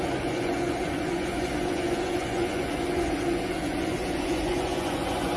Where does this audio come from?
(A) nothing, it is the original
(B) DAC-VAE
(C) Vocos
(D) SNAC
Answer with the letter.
C